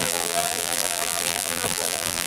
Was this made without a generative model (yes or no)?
no